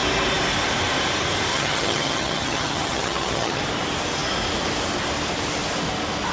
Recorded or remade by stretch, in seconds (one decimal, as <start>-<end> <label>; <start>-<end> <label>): 0.0-1.5 recorded; 1.5-3.6 remade; 3.6-6.3 recorded